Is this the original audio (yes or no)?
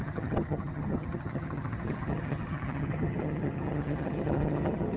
no